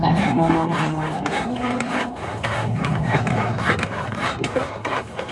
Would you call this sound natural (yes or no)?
no